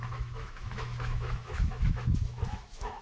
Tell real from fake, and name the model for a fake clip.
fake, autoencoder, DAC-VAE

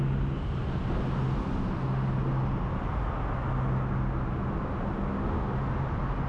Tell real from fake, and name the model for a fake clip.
real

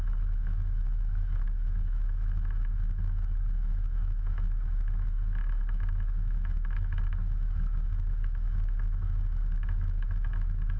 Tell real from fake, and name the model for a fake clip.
fake, autoencoder, DAC-VAE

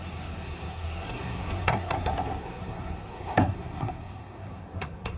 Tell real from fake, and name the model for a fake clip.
fake, codec, SNAC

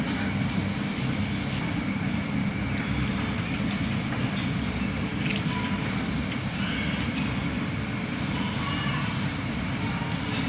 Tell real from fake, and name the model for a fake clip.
real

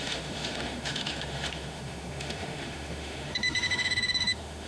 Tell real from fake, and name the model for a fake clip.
fake, autoencoder, DAC-VAE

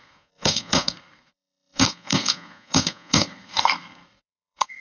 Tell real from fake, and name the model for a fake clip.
fake, codec, SNAC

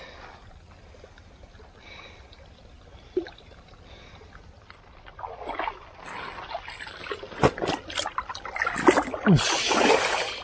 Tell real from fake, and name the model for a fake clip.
real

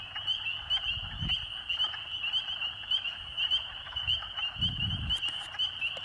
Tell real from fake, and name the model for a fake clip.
real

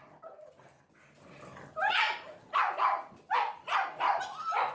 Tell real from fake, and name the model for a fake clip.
fake, vocoder, BigVGAN v2